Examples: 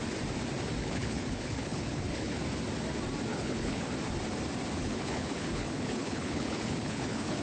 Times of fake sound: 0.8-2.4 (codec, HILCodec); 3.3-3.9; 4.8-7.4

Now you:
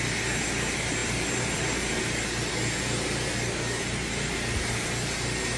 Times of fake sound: 1.0-1.9 (vocoder, BigVGAN v2)

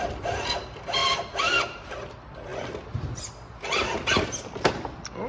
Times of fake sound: none

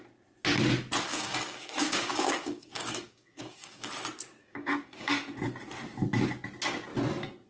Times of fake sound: 1.1-3.9 (codec, DAC); 4.4-5.1

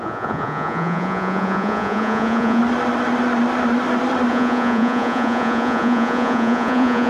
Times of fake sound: 0.0-2.6 (vocoder, Vocos); 4.3-7.1

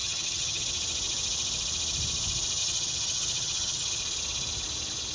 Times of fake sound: 0.0-0.6 (vocoder, HiFi-GAN); 2.6-4.0